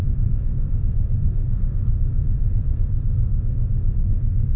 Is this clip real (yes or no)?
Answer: no